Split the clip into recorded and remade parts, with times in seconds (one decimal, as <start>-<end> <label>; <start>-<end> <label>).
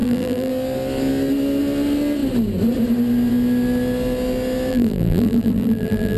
0.0-0.5 remade; 0.5-4.7 recorded; 4.7-6.2 remade